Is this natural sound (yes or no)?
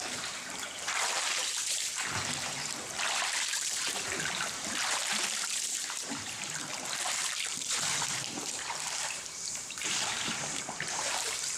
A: no